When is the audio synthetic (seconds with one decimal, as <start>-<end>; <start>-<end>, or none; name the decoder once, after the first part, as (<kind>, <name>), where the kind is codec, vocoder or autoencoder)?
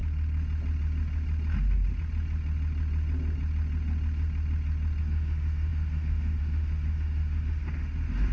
5.0-8.3 (autoencoder, DAC-VAE)